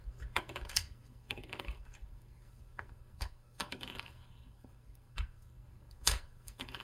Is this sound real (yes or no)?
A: no